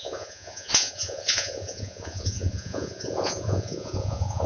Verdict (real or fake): fake